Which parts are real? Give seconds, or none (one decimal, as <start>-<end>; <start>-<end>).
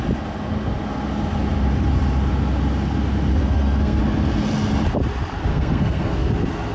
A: 0.0-3.4; 4.0-5.5; 6.3-6.7